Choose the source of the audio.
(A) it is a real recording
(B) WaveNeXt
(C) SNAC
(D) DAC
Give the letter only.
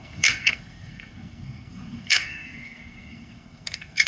C